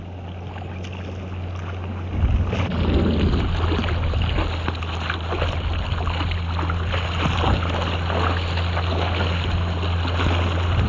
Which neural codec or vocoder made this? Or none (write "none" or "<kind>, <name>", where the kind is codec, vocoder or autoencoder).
none